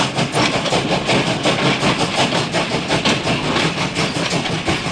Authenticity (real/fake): real